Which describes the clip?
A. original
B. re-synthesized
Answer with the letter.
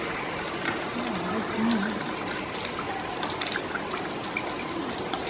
A